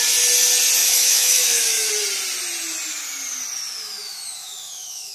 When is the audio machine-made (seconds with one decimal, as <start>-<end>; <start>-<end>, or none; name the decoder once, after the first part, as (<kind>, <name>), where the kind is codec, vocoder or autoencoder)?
0.8-1.9 (autoencoder, DAC-VAE); 3.8-5.1